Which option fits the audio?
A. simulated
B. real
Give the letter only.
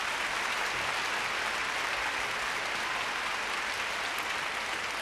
B